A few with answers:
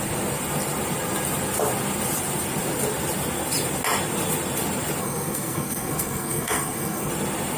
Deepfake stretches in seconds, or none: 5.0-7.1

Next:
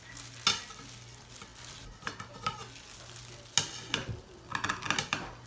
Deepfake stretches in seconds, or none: none

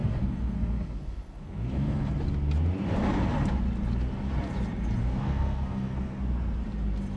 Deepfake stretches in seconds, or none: 0.0-2.1; 5.0-6.2

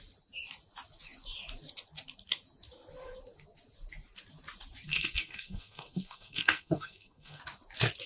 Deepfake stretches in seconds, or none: 4.9-7.4

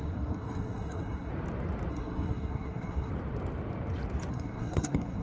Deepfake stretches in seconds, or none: 0.0-1.3; 1.9-3.1; 4.3-5.2